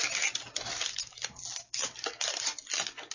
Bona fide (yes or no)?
yes